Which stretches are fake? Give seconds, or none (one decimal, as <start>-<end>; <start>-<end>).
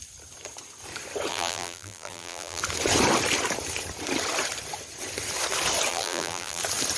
1.3-2.6; 5.9-6.6